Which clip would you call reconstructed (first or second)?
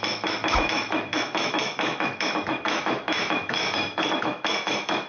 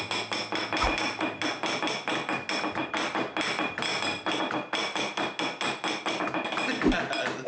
first